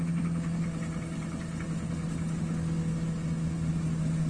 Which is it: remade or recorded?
recorded